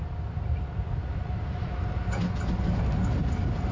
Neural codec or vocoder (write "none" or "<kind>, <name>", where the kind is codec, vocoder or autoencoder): none